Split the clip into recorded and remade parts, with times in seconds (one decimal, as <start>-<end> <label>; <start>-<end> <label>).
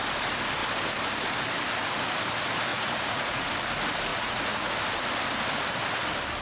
0.0-2.7 recorded; 2.7-3.5 remade; 3.5-4.1 recorded; 4.1-4.7 remade; 4.7-6.4 recorded